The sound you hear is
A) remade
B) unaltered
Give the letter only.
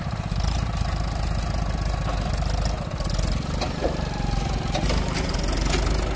B